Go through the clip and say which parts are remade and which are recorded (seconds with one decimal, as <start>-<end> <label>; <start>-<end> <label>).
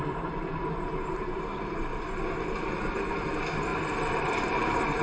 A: 0.0-1.9 remade; 1.9-2.4 recorded; 2.4-3.7 remade; 3.7-4.2 recorded; 4.2-5.0 remade